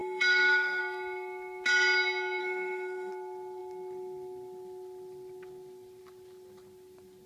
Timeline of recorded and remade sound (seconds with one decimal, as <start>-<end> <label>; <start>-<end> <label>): 0.0-0.8 remade; 0.8-2.4 recorded; 2.4-3.1 remade; 3.1-7.3 recorded